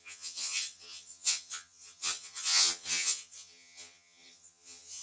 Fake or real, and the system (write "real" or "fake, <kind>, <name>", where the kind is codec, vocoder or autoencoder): fake, vocoder, HiFi-GAN